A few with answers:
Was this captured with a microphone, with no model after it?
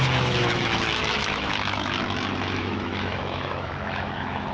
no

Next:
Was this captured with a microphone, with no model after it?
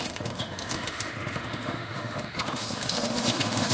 no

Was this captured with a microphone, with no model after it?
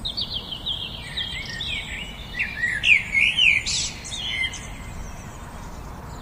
yes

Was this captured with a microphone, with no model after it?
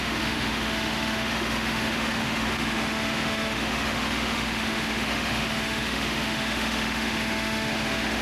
no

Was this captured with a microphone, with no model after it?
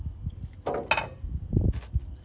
yes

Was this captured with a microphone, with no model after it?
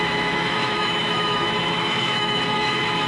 no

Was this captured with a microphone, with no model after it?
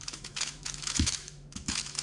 no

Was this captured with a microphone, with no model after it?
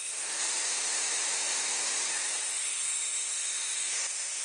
no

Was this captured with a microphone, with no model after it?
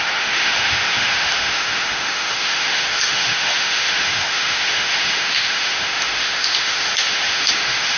no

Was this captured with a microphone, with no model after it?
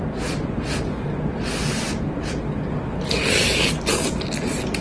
yes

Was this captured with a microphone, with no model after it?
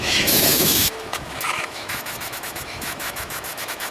no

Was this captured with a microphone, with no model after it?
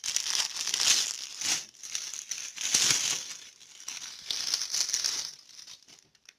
yes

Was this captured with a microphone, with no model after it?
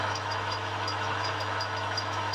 no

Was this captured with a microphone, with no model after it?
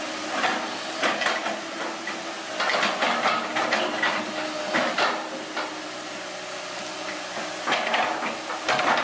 yes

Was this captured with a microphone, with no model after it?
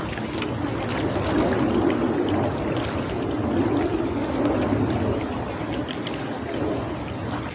yes